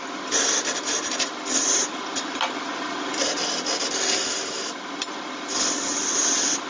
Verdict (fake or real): real